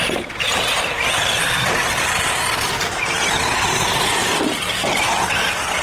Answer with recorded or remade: recorded